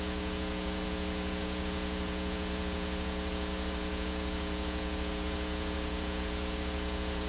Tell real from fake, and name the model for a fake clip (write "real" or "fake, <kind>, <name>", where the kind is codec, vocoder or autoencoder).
fake, vocoder, Vocos